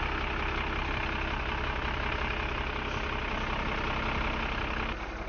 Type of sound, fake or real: real